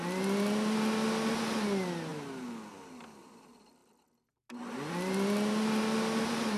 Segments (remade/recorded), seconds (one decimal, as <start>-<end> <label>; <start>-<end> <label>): 0.0-2.1 remade; 2.1-2.7 recorded; 2.7-3.8 remade; 3.8-4.9 recorded; 4.9-6.6 remade

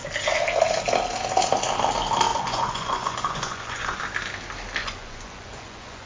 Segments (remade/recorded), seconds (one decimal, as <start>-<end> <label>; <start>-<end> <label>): 0.0-2.3 recorded; 2.3-4.0 remade; 4.0-4.8 recorded; 4.8-6.1 remade

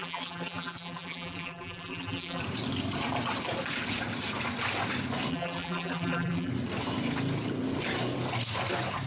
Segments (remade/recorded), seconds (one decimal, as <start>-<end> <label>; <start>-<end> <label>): 0.0-2.4 remade; 2.4-5.3 recorded; 5.3-6.5 remade; 6.5-9.1 recorded